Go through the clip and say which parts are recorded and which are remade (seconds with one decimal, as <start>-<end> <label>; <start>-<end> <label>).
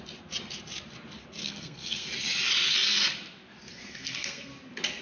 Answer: 0.0-1.4 recorded; 1.4-2.1 remade; 2.1-3.7 recorded; 3.7-4.5 remade; 4.5-5.0 recorded